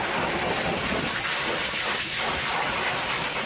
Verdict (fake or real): real